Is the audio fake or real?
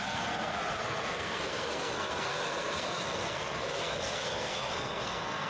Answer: fake